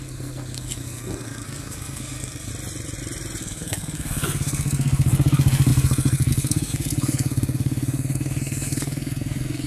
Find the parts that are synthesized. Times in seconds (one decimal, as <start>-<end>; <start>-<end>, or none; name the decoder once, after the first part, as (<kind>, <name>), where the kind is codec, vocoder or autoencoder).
0.0-2.5 (codec, SNAC); 3.4-9.7

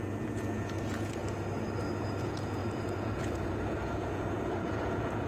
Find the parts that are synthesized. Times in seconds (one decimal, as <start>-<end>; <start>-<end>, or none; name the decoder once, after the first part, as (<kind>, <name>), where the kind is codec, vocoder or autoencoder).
0.0-1.2 (vocoder, Vocos); 2.2-5.3

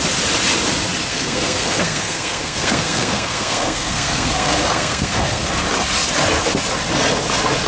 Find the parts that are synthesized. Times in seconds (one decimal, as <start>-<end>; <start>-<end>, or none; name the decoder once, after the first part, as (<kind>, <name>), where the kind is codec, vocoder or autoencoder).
1.1-5.5 (codec, SNAC)

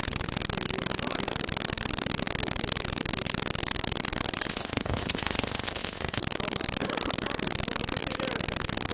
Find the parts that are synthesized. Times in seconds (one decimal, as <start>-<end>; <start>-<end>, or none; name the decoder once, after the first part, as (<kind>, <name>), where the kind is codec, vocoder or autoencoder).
4.5-6.2 (codec, ZipCodec)

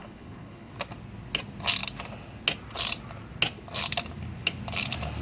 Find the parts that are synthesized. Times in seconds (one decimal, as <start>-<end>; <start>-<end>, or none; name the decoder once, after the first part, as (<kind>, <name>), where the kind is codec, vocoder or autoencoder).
0.0-0.7 (codec, HILCodec)

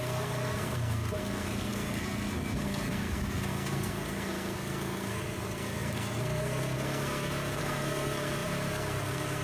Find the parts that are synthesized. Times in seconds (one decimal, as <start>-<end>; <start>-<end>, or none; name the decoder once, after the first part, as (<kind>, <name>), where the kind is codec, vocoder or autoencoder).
0.0-9.4 (codec, SNAC)